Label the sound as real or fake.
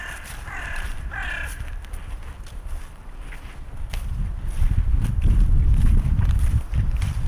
fake